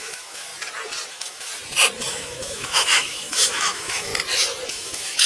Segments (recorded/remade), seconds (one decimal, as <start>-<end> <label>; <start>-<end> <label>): 0.0-0.5 remade; 0.5-1.1 recorded; 1.1-1.5 remade; 1.5-2.1 recorded; 2.1-4.1 remade; 4.1-4.7 recorded; 4.7-5.3 remade